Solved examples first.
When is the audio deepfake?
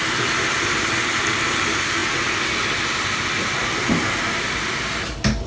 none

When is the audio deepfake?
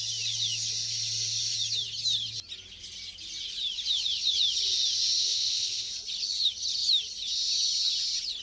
5.2-5.9 (codec, ZipCodec)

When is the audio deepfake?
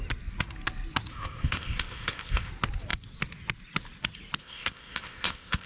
1.1-2.5 (codec, ZipCodec); 4.4-5.7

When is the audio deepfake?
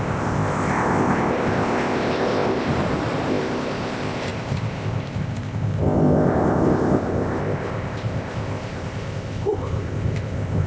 0.0-2.7 (codec, ZipCodec); 3.3-10.7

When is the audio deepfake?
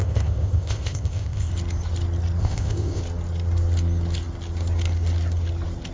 0.0-1.5 (codec, ZipCodec); 2.4-3.0